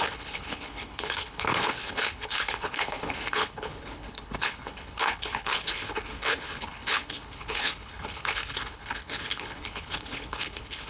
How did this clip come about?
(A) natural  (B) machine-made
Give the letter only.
B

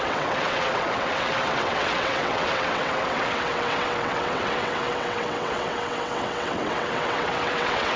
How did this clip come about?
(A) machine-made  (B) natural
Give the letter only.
A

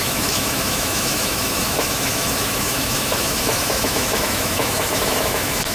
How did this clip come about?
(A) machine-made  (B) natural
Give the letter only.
A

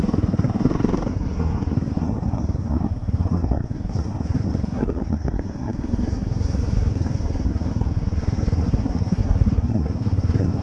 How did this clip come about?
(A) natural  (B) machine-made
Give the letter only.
B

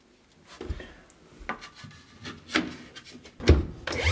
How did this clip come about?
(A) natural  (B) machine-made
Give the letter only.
A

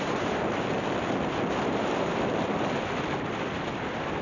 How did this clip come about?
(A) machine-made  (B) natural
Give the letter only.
A